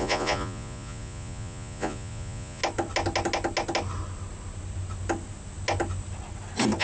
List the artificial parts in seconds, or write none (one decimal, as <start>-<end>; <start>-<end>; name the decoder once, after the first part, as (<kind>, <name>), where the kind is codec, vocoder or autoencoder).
0.0-2.6 (vocoder, Vocos)